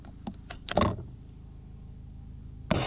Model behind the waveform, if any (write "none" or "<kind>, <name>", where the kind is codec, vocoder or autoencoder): none